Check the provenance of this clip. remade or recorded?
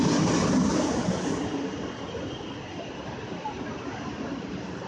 recorded